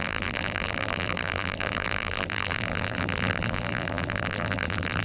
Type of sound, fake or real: fake